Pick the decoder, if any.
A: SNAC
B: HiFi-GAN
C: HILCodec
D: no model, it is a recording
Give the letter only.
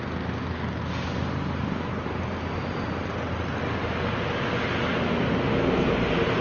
D